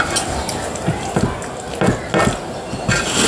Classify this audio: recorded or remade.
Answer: recorded